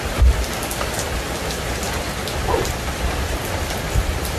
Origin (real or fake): real